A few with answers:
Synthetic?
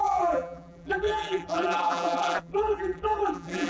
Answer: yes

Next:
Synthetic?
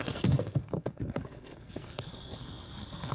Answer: yes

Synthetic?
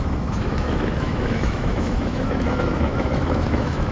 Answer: yes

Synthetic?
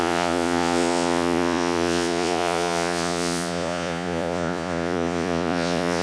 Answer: yes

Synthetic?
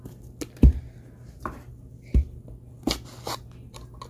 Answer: no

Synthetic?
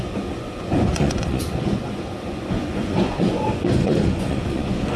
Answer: yes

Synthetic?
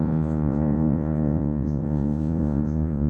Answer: yes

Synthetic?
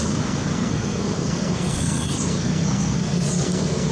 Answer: yes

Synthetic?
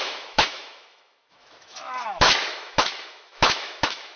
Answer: yes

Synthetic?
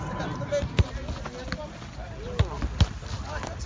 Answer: no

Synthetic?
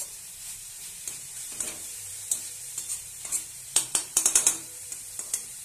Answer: yes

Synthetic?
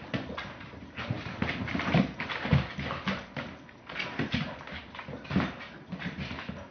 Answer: no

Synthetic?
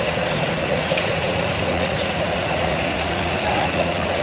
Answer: yes